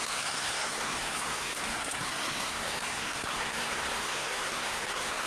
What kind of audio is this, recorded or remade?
remade